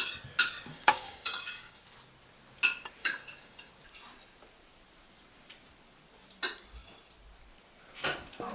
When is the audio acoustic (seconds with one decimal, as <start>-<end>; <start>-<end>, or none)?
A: 0.0-0.7; 1.8-3.0; 3.7-8.5